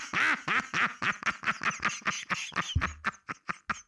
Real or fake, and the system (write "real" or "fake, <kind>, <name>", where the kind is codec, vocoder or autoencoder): real